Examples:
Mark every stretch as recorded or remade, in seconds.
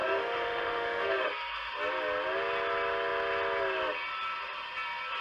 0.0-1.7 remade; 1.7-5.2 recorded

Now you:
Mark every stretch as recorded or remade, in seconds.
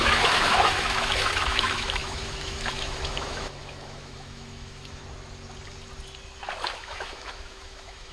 0.0-5.0 remade; 5.0-6.8 recorded; 6.8-8.1 remade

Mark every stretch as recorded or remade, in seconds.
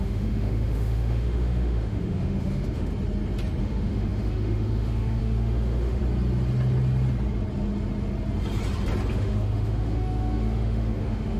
0.0-2.9 remade; 2.9-3.6 recorded; 3.6-6.0 remade; 6.0-9.1 recorded; 9.1-11.4 remade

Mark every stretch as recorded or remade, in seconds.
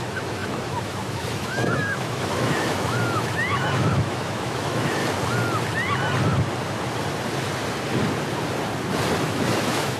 0.0-5.0 remade; 5.0-9.2 recorded; 9.2-10.0 remade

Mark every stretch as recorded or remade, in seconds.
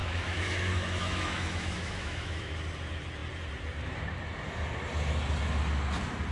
0.0-2.5 remade; 2.5-6.3 recorded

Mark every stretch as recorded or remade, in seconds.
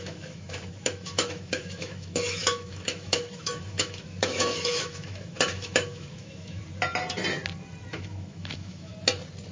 0.0-6.6 remade; 6.6-7.9 recorded; 7.9-8.9 remade; 8.9-9.5 recorded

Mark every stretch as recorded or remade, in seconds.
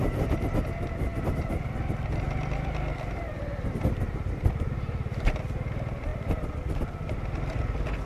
0.0-8.1 recorded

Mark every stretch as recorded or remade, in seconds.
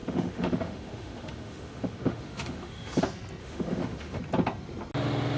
0.0-3.0 remade; 3.0-3.4 recorded; 3.4-4.2 remade; 4.2-5.4 recorded